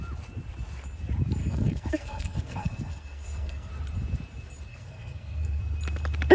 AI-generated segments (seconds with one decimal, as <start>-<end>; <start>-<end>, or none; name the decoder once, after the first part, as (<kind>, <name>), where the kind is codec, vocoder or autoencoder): 1.4-3.7 (codec, SNAC); 4.7-5.6